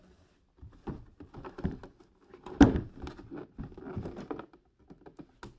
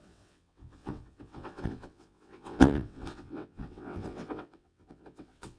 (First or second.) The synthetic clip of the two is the second